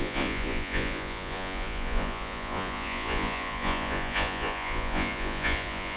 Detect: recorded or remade remade